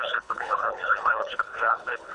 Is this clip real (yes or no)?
no